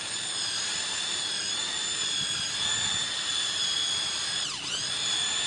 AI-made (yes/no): yes